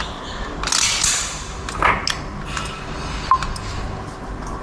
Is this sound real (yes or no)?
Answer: yes